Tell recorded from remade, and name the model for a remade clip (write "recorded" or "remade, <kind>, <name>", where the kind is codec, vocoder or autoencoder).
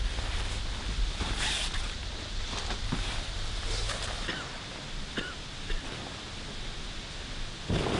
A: recorded